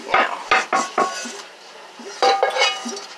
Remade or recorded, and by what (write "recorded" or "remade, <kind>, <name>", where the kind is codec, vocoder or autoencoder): recorded